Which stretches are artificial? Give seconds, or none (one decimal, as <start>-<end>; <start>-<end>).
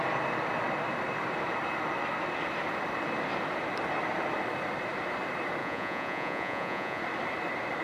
5.6-7.0